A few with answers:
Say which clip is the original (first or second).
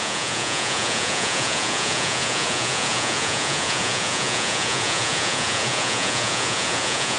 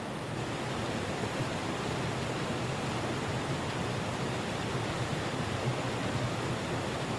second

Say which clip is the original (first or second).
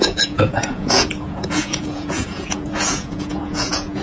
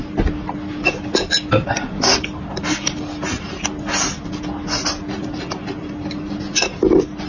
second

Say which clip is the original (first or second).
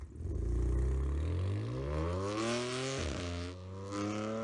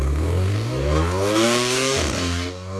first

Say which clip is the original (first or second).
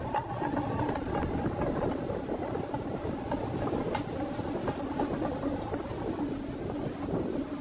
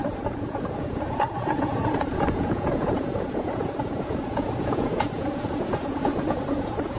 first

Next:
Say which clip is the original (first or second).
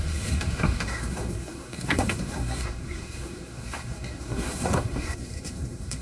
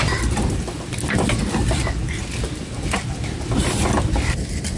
second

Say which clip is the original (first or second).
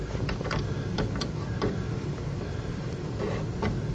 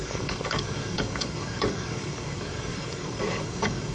first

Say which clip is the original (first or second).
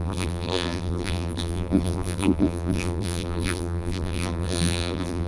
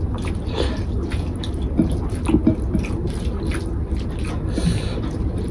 second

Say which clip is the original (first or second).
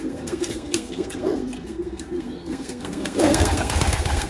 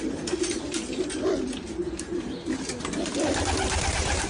second